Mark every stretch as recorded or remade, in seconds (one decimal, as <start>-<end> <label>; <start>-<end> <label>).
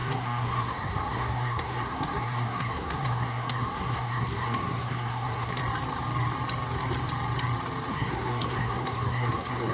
0.0-5.6 remade; 5.6-7.9 recorded; 7.9-9.7 remade